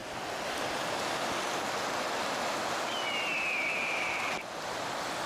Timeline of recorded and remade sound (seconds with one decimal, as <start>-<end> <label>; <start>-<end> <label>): 0.0-0.6 recorded; 0.6-2.6 remade; 2.6-5.3 recorded